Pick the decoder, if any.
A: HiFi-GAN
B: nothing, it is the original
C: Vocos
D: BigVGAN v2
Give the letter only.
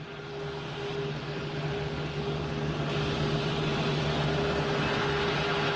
B